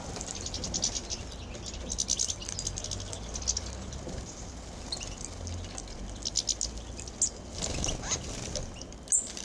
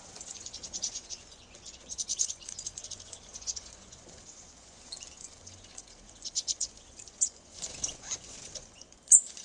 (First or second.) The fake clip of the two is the second